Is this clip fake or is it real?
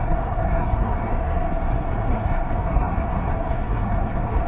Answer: fake